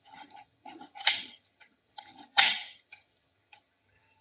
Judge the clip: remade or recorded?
remade